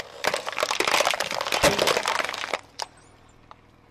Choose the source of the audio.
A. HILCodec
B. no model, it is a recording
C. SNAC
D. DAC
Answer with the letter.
B